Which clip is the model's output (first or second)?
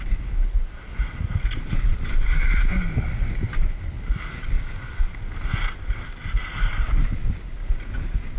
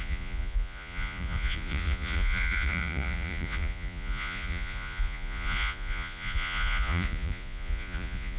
second